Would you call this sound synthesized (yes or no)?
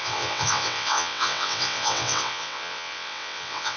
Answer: yes